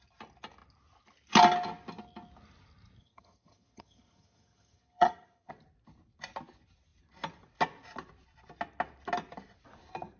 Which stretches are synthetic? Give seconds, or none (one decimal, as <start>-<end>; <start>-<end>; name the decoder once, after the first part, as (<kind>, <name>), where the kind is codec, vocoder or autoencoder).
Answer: 3.0-5.5 (vocoder, HiFi-GAN)